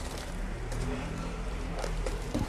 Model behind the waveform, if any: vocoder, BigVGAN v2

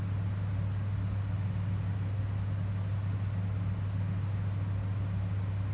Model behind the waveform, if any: none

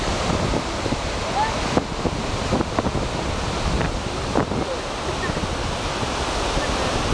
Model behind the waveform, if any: none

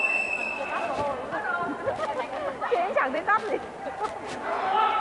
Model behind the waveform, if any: vocoder, BigVGAN v2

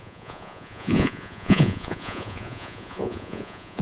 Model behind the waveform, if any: vocoder, Vocos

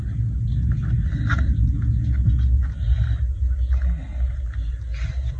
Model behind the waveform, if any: none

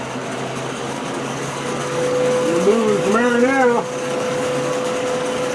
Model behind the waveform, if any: codec, DAC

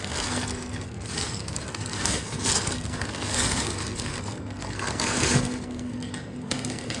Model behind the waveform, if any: codec, SNAC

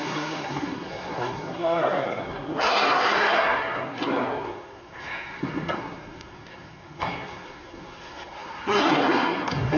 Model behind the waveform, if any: codec, SNAC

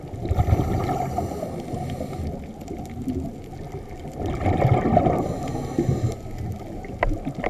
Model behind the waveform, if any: none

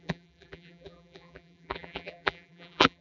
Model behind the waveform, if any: vocoder, BigVGAN v2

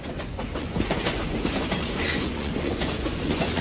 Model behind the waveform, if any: vocoder, Vocos